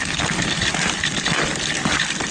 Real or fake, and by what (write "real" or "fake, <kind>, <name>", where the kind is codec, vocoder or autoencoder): real